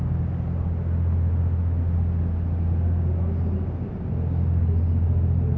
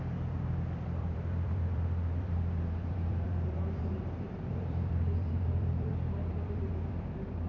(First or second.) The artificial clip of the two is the second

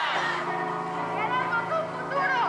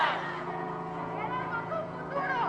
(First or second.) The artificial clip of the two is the second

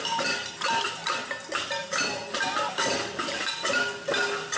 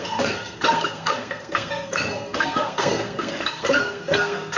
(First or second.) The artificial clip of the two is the second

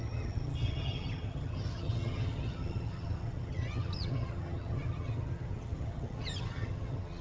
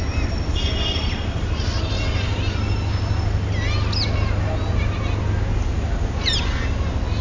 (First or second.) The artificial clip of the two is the first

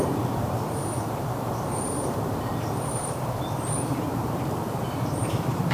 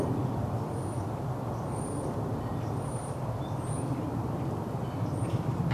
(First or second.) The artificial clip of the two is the first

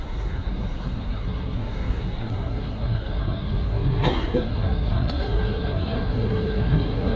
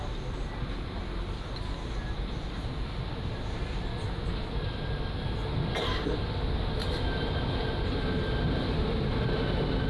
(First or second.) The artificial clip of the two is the first